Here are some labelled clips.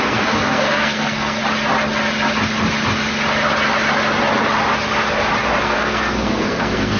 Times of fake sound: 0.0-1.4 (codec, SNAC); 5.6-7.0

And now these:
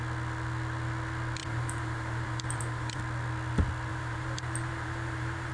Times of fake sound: 1.4-3.0 (vocoder, BigVGAN v2); 3.9-5.5

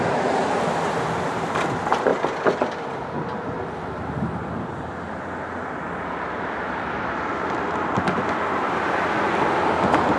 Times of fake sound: 0.4-0.9 (vocoder, BigVGAN v2)

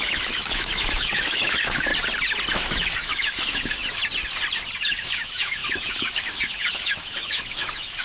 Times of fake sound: 0.0-1.9 (autoencoder, DAC-VAE); 2.5-4.0; 4.8-8.0

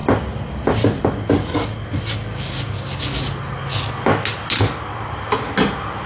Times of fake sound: none